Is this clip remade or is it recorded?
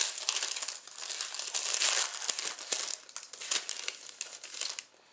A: recorded